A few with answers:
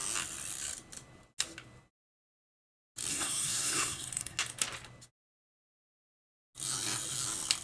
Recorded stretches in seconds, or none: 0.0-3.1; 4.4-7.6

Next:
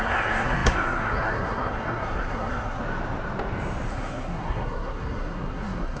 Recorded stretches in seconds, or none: 2.8-3.9

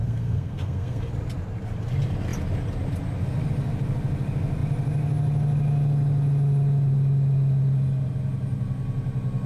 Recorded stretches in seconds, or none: 1.1-9.5

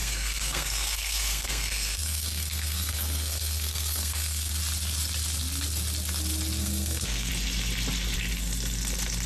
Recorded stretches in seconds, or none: 4.5-6.6; 7.3-9.3

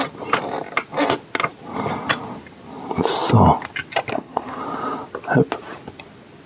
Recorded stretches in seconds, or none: 0.0-4.1; 4.6-6.5

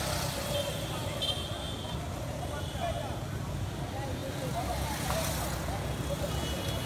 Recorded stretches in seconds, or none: 0.0-6.9

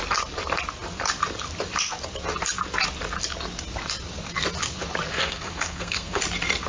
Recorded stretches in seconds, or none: 0.0-5.1; 6.2-6.7